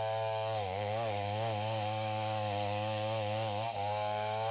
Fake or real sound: fake